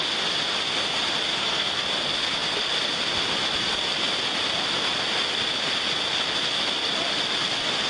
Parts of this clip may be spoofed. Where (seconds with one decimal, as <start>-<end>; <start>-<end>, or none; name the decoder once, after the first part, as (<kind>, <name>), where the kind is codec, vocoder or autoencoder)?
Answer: 1.3-1.8 (codec, SNAC)